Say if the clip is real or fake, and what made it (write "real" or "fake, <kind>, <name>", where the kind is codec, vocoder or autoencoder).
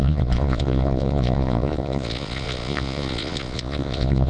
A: fake, vocoder, Vocos